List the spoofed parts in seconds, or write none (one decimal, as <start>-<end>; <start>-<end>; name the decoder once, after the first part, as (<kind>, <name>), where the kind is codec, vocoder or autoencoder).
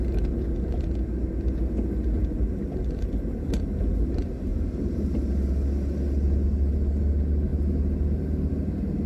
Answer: 4.5-5.3 (vocoder, BigVGAN v2)